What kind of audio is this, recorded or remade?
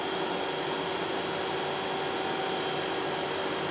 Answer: recorded